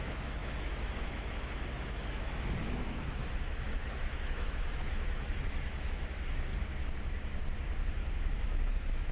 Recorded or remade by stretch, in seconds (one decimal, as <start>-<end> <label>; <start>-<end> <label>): 0.0-6.5 remade; 6.5-8.7 recorded; 8.7-9.1 remade